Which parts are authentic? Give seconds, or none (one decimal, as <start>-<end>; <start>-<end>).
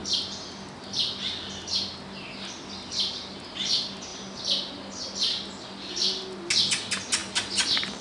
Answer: 0.0-8.0